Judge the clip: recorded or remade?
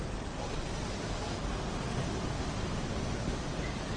recorded